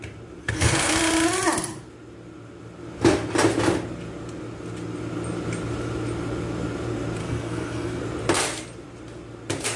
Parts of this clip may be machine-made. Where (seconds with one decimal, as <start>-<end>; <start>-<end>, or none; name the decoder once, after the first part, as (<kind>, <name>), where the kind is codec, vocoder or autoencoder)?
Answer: 0.4-1.0 (codec, SNAC); 7.2-8.0